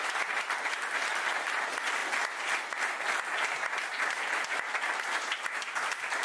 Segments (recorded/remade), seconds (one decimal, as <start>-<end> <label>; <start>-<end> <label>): 0.0-6.2 recorded